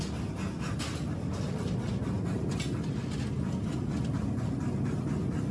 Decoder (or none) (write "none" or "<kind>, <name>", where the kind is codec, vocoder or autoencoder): none